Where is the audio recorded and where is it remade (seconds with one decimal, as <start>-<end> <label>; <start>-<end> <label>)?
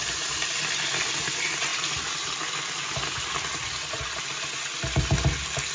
0.0-5.7 recorded